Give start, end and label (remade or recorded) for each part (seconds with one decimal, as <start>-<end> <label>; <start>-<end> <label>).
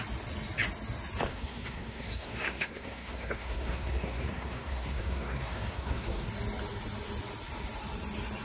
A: 0.0-1.3 recorded; 1.3-6.3 remade; 6.3-8.4 recorded